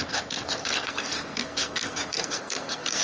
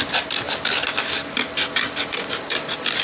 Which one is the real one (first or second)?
second